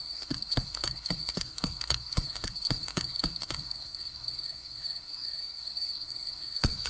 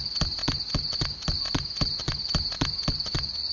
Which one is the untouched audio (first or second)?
second